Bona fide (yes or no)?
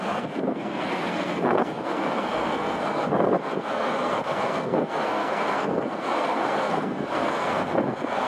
no